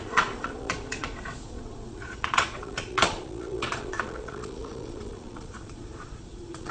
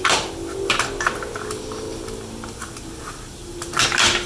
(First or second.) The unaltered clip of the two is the second